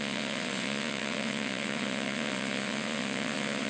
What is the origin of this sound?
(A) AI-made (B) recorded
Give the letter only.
A